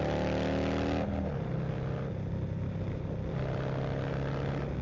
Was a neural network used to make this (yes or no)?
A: no